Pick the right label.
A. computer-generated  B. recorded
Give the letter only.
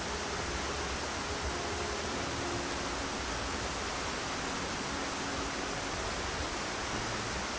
B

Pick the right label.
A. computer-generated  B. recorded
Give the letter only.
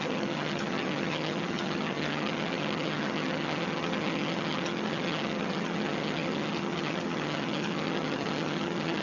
A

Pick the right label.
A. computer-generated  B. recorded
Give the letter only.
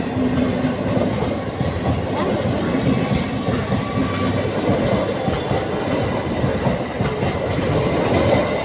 B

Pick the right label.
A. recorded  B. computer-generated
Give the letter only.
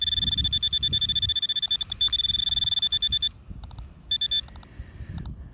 A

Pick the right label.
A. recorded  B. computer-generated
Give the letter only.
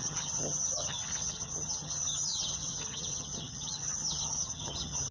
B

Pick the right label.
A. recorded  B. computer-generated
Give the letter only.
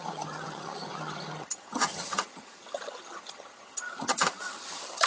B